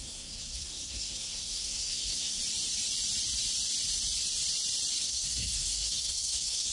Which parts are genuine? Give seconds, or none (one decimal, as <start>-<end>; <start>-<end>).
2.4-5.0